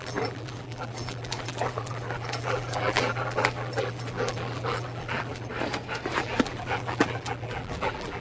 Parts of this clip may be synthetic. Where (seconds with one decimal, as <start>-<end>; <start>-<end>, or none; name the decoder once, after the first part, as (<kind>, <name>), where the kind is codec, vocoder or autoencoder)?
0.0-5.5 (vocoder, BigVGAN v2); 6.2-8.2